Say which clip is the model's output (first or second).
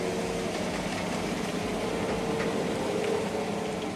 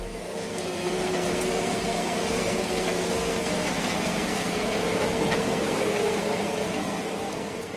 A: second